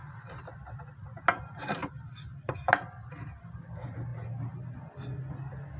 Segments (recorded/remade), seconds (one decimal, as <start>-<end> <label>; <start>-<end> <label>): 0.0-1.4 recorded; 1.4-1.8 remade; 1.8-3.1 recorded; 3.1-4.1 remade; 4.1-5.8 recorded